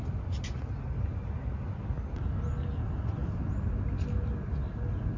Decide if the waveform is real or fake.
real